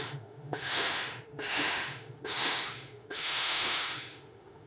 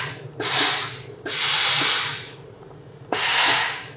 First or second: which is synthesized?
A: first